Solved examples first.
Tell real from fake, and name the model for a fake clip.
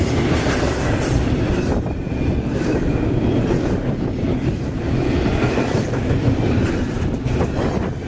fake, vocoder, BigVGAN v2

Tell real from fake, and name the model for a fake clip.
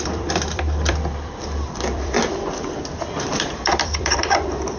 fake, vocoder, BigVGAN v2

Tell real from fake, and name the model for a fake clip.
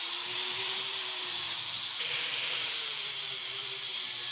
fake, vocoder, BigVGAN v2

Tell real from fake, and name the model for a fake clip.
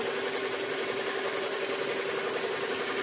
real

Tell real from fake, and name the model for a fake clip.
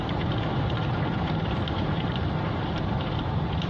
fake, vocoder, BigVGAN v2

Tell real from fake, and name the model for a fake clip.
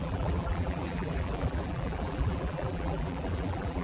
fake, vocoder, BigVGAN v2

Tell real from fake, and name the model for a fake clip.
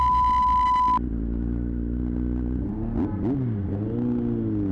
real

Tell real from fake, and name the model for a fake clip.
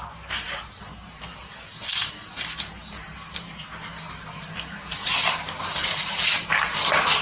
fake, vocoder, BigVGAN v2